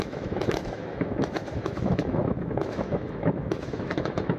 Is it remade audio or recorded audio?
remade